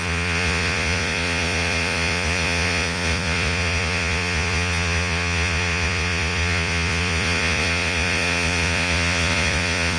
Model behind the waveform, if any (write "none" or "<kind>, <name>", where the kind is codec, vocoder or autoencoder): vocoder, Vocos